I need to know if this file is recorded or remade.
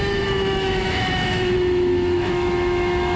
remade